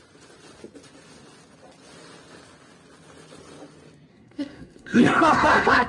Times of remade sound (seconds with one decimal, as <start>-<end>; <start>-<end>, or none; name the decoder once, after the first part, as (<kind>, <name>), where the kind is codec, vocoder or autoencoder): 4.1-5.9 (codec, SNAC)